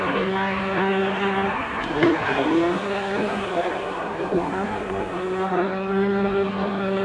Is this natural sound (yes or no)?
no